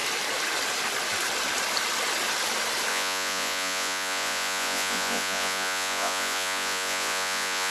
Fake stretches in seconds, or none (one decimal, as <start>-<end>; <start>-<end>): 2.9-7.7